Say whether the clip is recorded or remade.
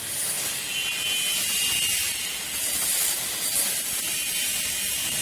recorded